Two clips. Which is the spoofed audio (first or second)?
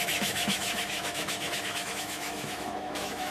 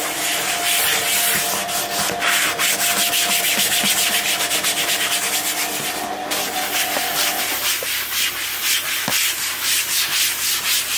first